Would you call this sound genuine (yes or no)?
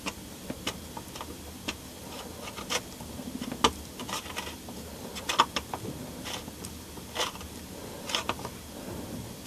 yes